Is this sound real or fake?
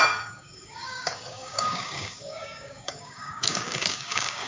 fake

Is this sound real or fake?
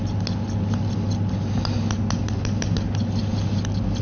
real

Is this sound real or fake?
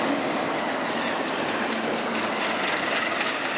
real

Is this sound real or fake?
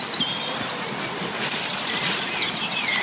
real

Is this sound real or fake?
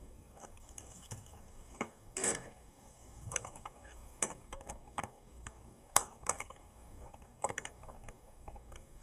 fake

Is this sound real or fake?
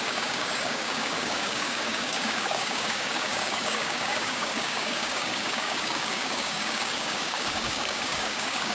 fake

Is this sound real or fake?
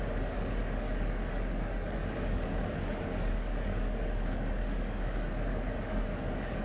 fake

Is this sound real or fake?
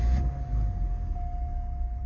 real